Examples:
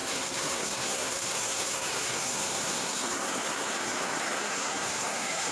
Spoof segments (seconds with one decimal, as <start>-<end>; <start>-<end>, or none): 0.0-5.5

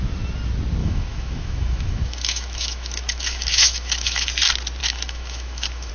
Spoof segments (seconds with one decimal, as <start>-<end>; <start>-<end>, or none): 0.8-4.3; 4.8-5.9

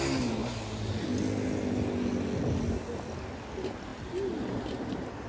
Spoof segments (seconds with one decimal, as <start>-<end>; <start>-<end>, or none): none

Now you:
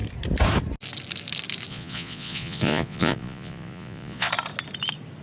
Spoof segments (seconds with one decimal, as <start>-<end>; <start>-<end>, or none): 1.7-4.3

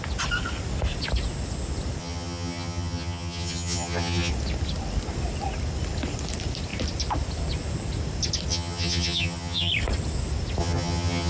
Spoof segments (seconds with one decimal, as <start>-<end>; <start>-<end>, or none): 2.0-4.3; 8.5-9.7; 10.6-11.3

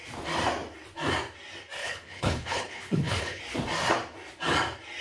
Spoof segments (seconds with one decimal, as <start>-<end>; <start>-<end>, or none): 1.8-3.4

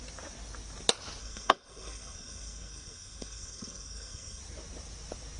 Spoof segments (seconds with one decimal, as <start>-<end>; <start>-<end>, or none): 1.2-4.4

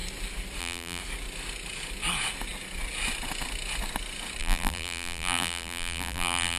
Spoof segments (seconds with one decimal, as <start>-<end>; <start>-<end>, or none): 0.6-1.0; 4.4-6.6